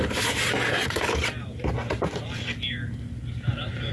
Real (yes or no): yes